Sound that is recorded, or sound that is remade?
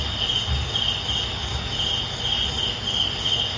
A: recorded